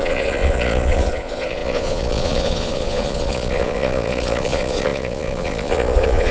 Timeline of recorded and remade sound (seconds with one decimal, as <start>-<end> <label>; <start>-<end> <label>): 0.0-6.3 remade